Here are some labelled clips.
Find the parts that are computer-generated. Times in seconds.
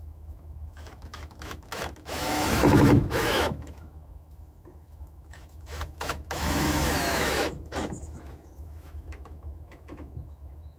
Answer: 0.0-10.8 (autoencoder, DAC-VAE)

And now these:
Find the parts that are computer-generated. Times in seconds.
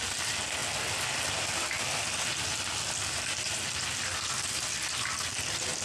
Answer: none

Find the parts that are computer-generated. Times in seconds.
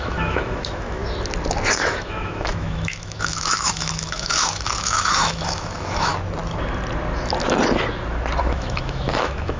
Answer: 0.0-1.0 (autoencoder, DAC-VAE); 1.7-6.1; 8.4-9.6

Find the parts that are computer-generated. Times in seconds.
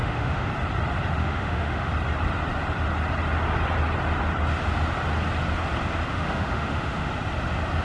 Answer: 0.0-0.5 (autoencoder, DAC-VAE); 1.2-1.9; 6.1-7.1